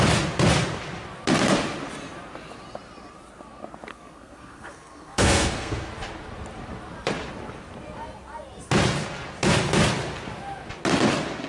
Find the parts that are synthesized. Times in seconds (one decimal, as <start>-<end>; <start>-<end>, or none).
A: 3.9-5.9